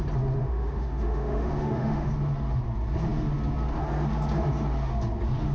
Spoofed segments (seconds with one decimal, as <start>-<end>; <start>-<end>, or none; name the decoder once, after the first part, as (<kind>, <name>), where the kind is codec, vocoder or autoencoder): 0.4-2.1 (autoencoder, DAC-VAE)